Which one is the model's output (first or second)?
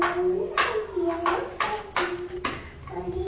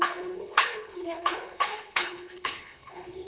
second